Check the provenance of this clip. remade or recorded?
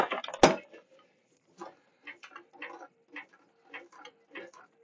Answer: recorded